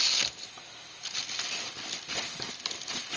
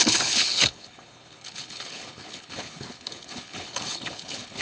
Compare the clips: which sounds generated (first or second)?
second